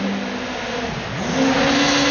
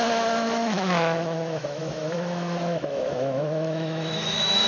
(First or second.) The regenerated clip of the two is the second